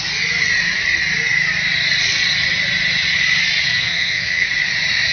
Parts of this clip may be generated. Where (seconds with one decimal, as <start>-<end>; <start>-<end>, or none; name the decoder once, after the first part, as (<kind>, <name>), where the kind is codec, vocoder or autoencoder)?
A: 3.7-4.5 (codec, SNAC)